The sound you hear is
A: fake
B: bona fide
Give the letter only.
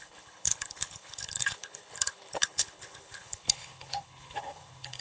A